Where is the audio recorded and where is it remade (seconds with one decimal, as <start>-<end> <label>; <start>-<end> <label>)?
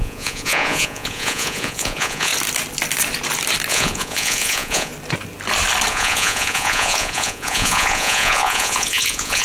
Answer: 0.0-2.3 remade; 2.3-3.7 recorded; 3.7-4.9 remade; 4.9-5.9 recorded; 5.9-9.4 remade